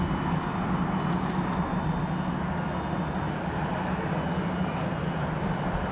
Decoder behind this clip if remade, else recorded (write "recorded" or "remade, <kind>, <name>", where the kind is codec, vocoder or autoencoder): recorded